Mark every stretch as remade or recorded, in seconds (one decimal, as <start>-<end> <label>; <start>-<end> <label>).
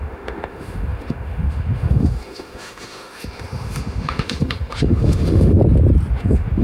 0.0-5.6 remade; 5.6-6.1 recorded; 6.1-6.6 remade